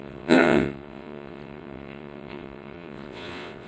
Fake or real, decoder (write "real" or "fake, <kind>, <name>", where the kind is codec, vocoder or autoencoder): fake, vocoder, WaveNeXt